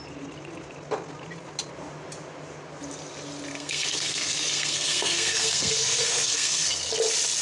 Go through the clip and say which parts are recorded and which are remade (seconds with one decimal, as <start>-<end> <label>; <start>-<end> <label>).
0.0-3.5 recorded; 3.5-6.9 remade; 6.9-7.4 recorded